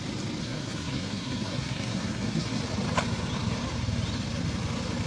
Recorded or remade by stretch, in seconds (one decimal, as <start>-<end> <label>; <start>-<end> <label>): 0.0-0.4 recorded; 0.4-2.6 remade; 2.6-5.1 recorded